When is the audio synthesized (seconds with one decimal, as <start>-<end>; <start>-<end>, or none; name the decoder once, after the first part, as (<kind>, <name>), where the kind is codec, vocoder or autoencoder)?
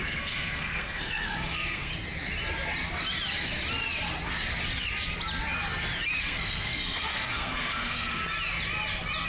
0.0-1.9 (codec, SNAC); 6.2-8.2